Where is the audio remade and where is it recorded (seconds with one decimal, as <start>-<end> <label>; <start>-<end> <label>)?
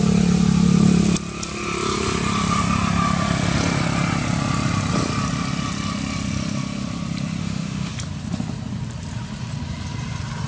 0.0-7.4 recorded; 7.4-7.9 remade; 7.9-10.5 recorded